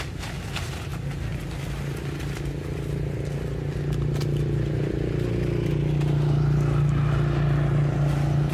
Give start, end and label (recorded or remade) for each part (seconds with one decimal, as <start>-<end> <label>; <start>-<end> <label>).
0.0-8.5 recorded